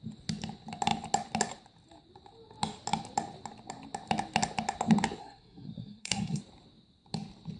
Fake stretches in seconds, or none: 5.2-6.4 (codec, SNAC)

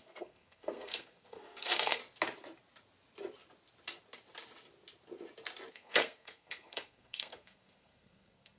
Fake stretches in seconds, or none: 0.0-2.0 (codec, SNAC); 5.7-8.6

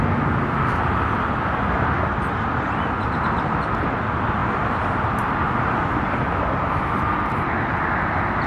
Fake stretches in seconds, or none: none

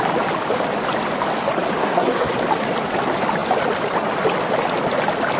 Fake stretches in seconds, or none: 1.8-2.3 (codec, SNAC)

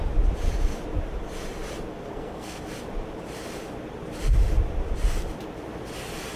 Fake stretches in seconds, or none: 1.9-2.6 (codec, SNAC)

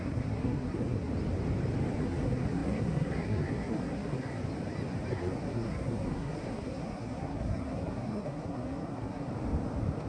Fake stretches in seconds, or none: 0.0-1.1 (codec, SNAC); 2.0-4.4; 5.1-9.3

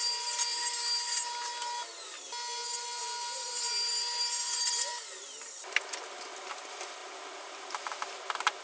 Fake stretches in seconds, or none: none

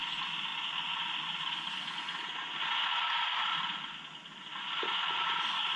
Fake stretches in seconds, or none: none